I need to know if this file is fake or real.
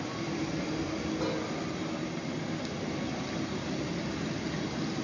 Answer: real